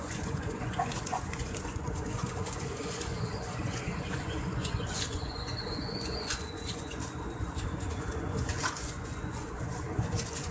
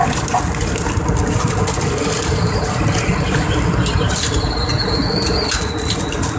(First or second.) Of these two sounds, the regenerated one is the first